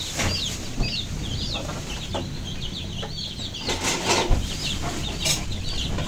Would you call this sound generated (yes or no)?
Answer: no